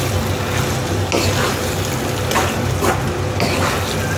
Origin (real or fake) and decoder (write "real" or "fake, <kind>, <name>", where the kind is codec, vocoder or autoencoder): real